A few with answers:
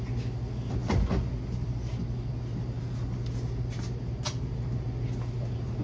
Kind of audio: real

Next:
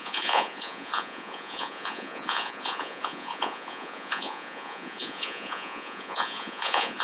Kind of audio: fake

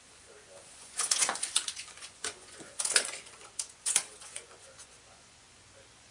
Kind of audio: fake